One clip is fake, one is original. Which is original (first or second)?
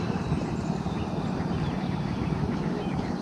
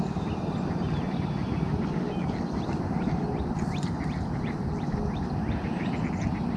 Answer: second